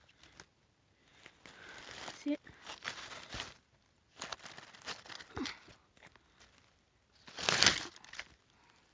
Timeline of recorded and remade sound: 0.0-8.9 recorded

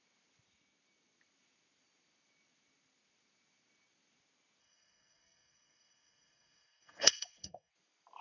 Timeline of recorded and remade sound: 0.0-4.6 recorded; 4.6-7.7 remade; 7.7-8.2 recorded

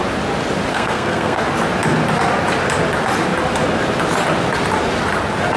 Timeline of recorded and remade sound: 0.0-0.7 recorded; 0.7-1.4 remade; 1.4-5.6 recorded

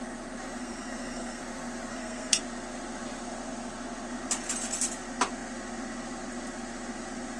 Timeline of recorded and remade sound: 0.0-0.6 recorded; 0.6-1.4 remade; 1.4-1.9 recorded; 1.9-2.4 remade; 2.4-7.4 recorded